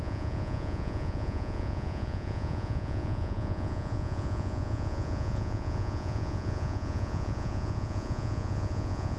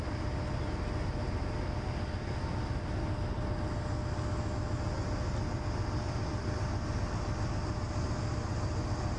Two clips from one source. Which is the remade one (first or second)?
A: first